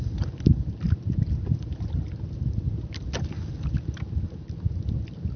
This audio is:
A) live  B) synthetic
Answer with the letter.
A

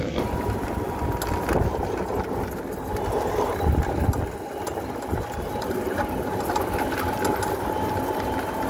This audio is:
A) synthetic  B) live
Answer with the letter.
B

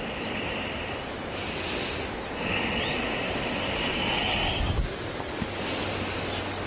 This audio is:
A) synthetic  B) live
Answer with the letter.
B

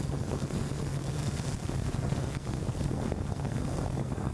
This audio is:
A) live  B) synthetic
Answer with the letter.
B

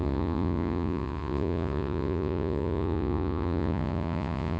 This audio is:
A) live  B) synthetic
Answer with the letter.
B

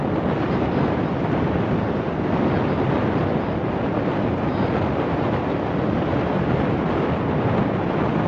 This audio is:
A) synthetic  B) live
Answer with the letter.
B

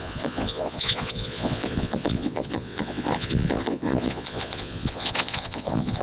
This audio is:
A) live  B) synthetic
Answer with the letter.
B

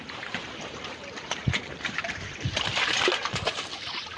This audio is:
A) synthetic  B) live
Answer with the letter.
A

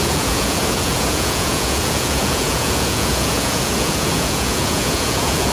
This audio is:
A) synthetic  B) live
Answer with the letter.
A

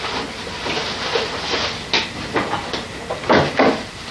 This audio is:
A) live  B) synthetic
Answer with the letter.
A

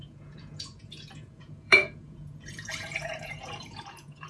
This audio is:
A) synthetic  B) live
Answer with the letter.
A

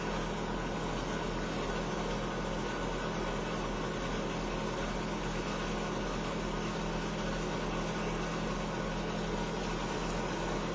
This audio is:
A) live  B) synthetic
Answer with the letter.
A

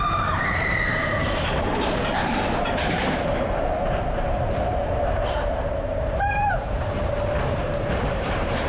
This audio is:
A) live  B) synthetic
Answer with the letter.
B